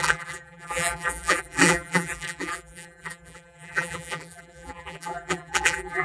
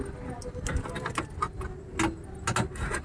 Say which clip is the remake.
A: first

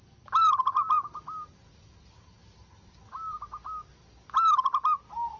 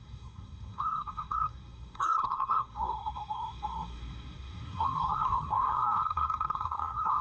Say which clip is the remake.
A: second